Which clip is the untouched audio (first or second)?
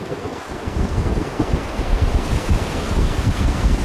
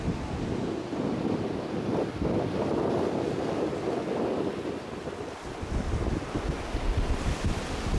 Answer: second